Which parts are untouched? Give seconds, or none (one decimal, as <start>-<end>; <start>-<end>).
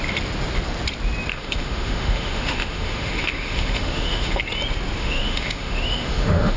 0.0-1.3; 4.4-5.0